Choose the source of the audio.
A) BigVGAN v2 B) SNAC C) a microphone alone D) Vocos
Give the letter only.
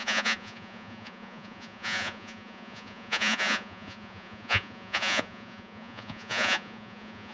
D